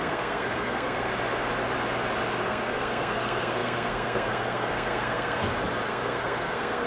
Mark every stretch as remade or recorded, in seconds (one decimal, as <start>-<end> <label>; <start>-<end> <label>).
0.0-1.1 remade; 1.1-2.4 recorded; 2.4-5.4 remade; 5.4-5.9 recorded; 5.9-6.9 remade